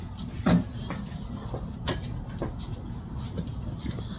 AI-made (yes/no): no